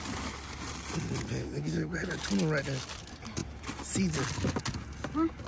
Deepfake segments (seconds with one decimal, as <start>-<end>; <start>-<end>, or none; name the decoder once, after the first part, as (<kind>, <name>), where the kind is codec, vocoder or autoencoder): 1.4-2.1 (codec, HILCodec)